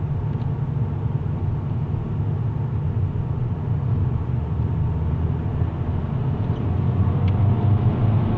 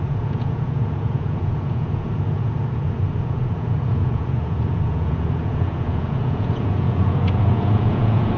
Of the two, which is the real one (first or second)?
first